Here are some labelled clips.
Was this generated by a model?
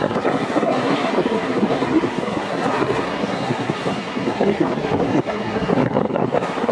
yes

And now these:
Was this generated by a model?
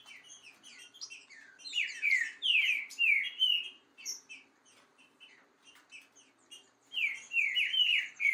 yes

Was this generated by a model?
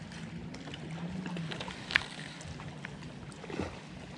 no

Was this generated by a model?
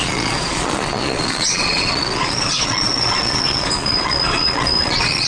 yes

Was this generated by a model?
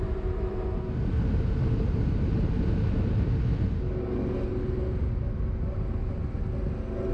no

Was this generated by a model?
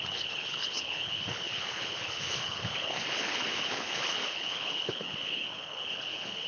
yes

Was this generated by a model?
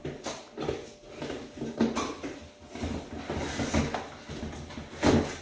no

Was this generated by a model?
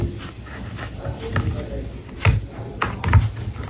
no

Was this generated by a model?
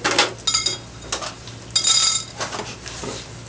no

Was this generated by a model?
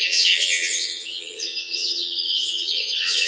yes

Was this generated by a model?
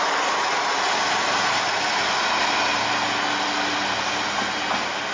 no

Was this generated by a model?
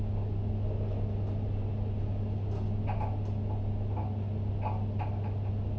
no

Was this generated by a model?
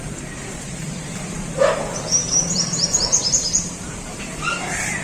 yes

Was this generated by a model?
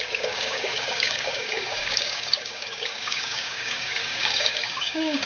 yes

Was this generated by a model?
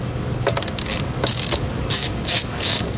yes